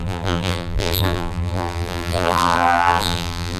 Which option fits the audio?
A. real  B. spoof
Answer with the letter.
B